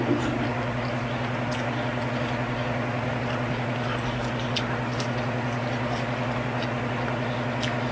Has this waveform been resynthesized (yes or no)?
no